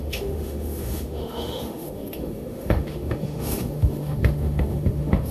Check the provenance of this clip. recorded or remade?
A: remade